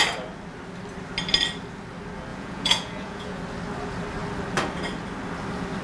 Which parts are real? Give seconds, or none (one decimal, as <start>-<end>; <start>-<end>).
0.0-2.3; 3.4-5.8